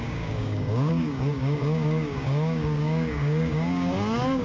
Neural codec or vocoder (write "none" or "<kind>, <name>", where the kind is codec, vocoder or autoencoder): codec, DAC